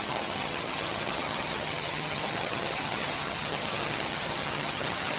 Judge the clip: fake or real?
fake